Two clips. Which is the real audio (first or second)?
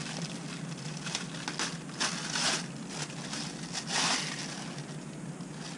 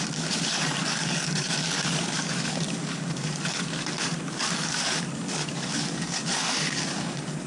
first